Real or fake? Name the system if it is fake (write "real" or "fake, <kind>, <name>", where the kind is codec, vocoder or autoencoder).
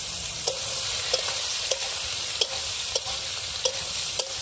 fake, vocoder, BigVGAN v2